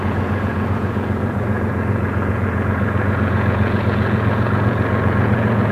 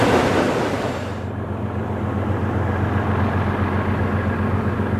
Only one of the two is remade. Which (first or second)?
first